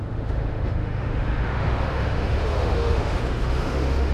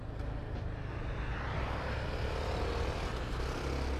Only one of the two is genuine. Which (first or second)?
second